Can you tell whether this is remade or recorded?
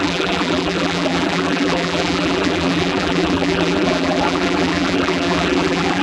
remade